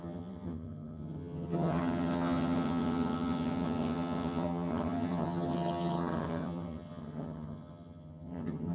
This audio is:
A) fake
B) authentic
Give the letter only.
A